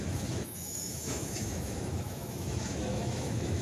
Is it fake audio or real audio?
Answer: fake